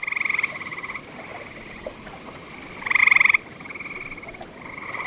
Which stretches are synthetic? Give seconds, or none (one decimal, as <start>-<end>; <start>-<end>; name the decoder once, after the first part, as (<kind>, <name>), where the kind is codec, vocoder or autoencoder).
0.0-1.3 (vocoder, BigVGAN v2); 3.0-5.1